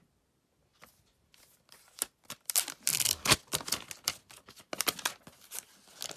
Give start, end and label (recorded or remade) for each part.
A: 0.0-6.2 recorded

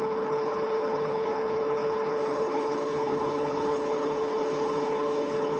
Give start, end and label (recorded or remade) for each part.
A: 0.0-5.6 remade

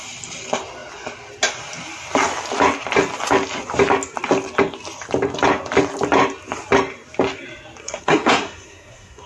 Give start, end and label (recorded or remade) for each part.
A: 0.0-7.8 recorded; 7.8-9.3 remade

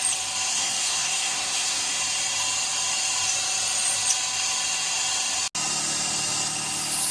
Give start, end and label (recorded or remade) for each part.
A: 0.0-0.5 recorded; 0.5-2.0 remade; 2.0-7.1 recorded

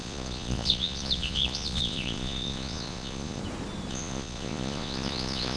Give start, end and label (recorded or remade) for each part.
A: 0.0-3.4 remade; 3.4-3.9 recorded; 3.9-5.6 remade